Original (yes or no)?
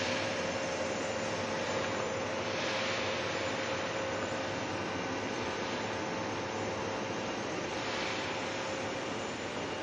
yes